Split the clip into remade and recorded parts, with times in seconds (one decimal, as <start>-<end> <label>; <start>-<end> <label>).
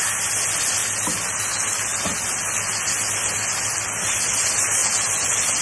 0.0-5.6 recorded